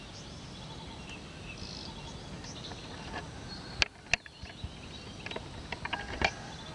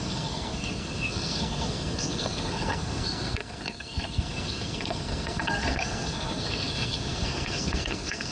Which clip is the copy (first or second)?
second